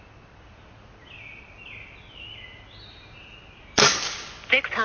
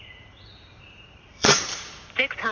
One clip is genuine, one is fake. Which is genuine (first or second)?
first